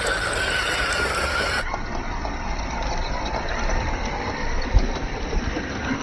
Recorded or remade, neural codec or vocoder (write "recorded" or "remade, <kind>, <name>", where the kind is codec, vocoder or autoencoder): remade, vocoder, BigVGAN v2